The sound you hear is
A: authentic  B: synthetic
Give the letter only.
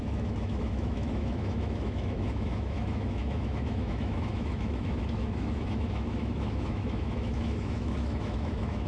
B